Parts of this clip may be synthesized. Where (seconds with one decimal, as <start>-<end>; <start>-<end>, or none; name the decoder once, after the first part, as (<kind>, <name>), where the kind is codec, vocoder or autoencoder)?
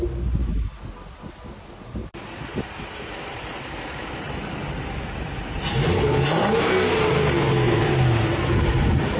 0.4-0.9 (autoencoder, DAC-VAE)